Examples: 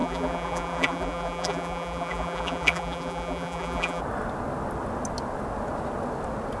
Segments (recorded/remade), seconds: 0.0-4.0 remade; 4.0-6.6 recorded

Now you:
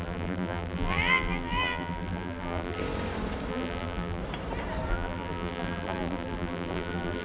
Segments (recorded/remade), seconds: 0.0-2.8 remade; 2.8-3.5 recorded; 3.5-4.2 remade; 4.2-4.9 recorded; 4.9-7.2 remade

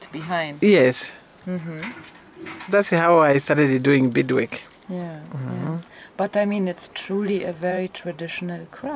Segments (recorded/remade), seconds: 0.0-6.3 recorded; 6.3-8.3 remade; 8.3-9.0 recorded

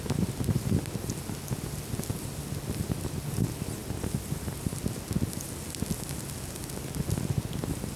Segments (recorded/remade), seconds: 0.0-8.0 recorded

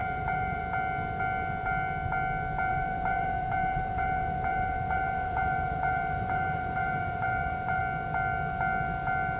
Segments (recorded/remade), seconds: 0.0-0.6 remade; 0.6-2.7 recorded; 2.7-7.8 remade; 7.8-9.4 recorded